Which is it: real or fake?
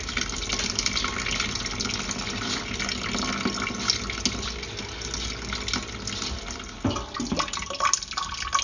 real